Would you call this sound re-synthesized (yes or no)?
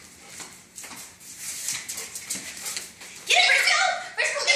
yes